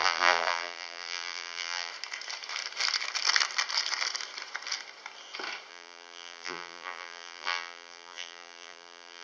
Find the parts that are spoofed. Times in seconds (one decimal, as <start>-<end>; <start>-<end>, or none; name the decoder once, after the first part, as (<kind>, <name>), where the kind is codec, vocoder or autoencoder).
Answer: 0.0-1.9 (vocoder, BigVGAN v2); 5.7-9.2